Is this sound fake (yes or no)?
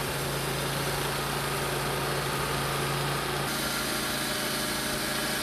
no